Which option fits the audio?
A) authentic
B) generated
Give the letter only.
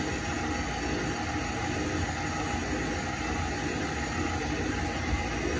A